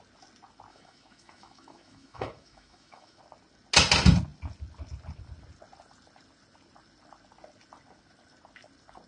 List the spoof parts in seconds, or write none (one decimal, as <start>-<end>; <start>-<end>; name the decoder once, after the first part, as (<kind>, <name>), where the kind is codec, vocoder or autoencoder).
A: 0.7-3.2 (autoencoder, DAC-VAE)